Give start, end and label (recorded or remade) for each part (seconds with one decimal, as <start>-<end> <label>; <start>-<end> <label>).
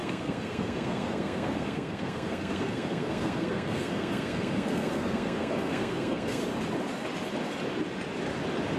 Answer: 0.0-6.4 remade; 6.4-8.8 recorded